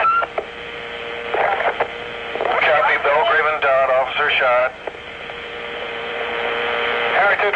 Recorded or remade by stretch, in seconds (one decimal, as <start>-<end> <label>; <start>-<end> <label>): 0.0-2.2 recorded; 2.2-3.4 remade; 3.4-4.6 recorded; 4.6-6.3 remade; 6.3-7.6 recorded